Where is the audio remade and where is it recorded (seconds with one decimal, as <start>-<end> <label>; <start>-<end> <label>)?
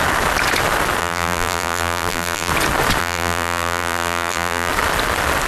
0.0-1.0 recorded; 1.0-2.5 remade; 2.5-3.0 recorded; 3.0-4.7 remade; 4.7-5.5 recorded